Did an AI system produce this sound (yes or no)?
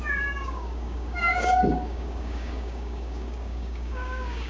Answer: yes